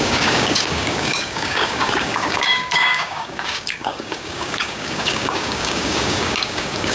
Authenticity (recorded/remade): remade